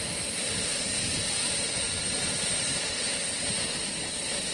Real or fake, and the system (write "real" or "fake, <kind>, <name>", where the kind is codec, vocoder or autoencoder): real